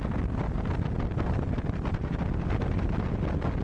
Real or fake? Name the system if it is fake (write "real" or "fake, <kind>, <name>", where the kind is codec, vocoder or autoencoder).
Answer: real